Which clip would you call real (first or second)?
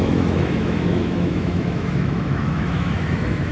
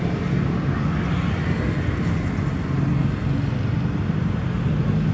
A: second